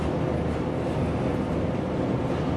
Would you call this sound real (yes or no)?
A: yes